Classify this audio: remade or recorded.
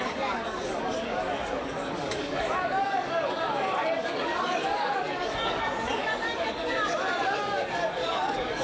remade